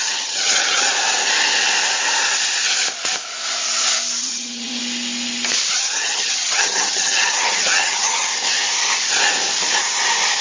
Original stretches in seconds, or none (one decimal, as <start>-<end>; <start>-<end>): 0.9-4.2; 4.8-5.7; 8.3-10.4